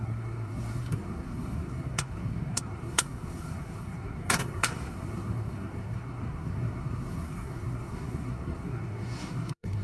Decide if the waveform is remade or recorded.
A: remade